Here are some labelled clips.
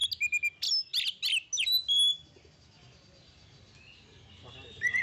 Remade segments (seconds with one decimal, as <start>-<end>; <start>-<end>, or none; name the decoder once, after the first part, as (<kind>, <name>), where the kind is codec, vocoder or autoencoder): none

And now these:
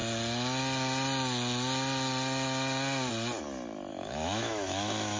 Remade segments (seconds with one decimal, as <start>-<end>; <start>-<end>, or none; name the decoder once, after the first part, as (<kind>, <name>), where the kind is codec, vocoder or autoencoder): 3.9-5.2 (autoencoder, DAC-VAE)

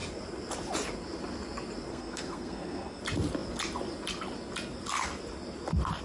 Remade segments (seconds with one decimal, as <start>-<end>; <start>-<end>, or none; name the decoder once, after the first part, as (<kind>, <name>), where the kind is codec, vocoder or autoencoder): 1.9-3.0 (codec, SNAC)

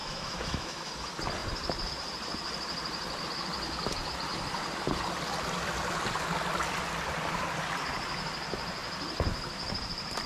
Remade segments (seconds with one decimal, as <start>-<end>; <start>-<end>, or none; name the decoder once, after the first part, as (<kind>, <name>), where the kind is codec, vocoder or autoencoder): 0.0-0.9 (autoencoder, DAC-VAE)

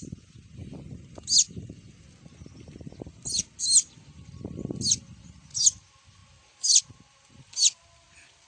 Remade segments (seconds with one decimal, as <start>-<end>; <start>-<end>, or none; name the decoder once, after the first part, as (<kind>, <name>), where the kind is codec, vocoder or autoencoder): none

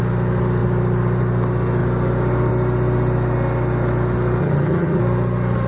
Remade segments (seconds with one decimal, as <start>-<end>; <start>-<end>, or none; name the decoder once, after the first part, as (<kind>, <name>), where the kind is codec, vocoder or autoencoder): 4.4-5.0 (vocoder, HiFi-GAN)

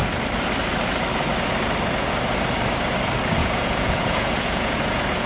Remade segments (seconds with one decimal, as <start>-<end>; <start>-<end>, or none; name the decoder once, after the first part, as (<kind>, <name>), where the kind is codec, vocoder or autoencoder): 3.4-5.3 (vocoder, Vocos)

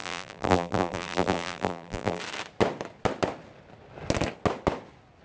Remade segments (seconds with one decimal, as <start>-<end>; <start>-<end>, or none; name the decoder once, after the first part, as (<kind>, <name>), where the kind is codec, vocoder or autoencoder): 0.0-2.2 (vocoder, BigVGAN v2)